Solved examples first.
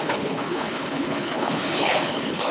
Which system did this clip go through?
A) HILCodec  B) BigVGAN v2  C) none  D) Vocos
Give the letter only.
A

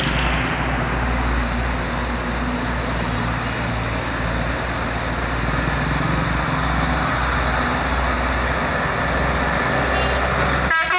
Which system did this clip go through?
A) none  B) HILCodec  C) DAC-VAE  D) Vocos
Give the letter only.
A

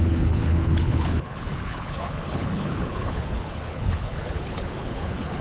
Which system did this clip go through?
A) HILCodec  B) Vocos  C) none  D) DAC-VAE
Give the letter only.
A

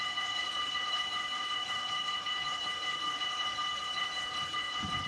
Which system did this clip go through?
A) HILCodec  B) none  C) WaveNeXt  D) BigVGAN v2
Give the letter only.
A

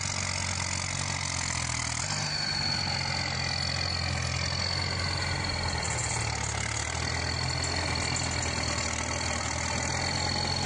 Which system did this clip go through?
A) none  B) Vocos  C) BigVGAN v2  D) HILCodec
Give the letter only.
A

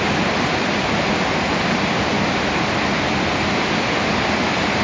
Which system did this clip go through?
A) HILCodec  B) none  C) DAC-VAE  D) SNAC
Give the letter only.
B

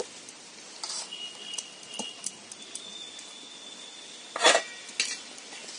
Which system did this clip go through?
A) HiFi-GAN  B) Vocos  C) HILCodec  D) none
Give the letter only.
D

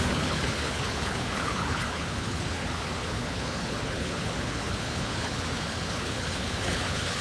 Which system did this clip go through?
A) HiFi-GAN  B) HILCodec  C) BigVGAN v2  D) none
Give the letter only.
B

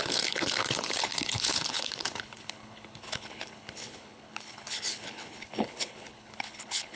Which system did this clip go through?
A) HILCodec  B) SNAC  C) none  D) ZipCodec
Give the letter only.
A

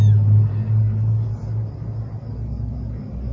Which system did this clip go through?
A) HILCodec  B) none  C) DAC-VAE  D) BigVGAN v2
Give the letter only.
B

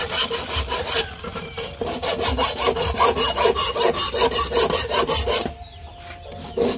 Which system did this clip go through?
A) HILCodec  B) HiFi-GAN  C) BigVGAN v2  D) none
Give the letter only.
D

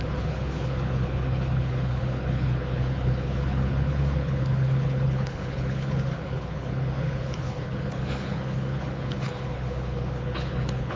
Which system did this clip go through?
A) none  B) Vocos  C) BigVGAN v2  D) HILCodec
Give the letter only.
D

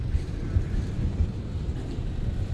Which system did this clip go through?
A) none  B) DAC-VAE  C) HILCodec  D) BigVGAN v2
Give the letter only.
A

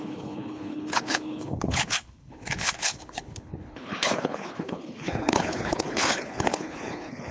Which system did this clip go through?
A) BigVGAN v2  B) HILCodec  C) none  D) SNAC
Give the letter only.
B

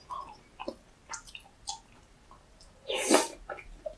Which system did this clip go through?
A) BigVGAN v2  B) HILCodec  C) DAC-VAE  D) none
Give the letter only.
D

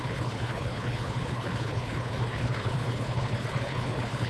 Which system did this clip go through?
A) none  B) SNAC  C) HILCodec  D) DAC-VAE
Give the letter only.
C